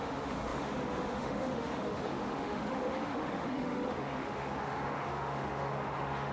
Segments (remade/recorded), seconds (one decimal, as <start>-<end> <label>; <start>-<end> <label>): 0.0-6.3 remade